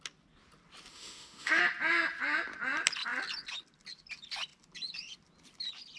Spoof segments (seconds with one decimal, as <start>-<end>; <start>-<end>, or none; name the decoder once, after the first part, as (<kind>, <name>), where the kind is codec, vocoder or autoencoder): 0.9-1.6 (autoencoder, DAC-VAE)